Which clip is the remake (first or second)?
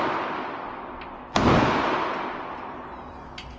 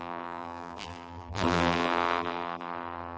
second